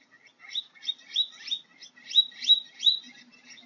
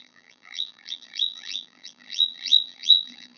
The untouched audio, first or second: first